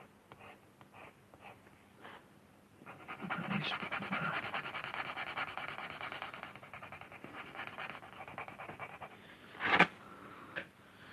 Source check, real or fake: real